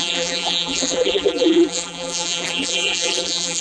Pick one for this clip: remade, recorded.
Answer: remade